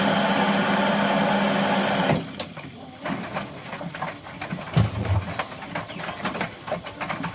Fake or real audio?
real